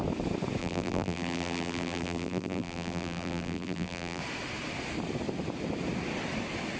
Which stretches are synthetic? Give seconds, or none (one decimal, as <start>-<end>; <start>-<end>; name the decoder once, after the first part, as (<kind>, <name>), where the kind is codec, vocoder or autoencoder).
0.6-4.2 (vocoder, BigVGAN v2)